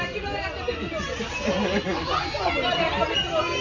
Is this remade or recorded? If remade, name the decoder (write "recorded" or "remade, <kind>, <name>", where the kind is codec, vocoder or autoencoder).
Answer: recorded